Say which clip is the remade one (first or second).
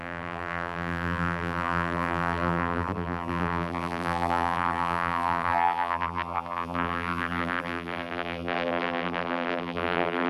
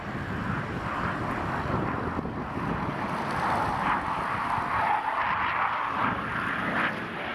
first